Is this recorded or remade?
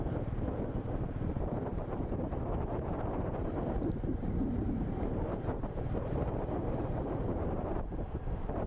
remade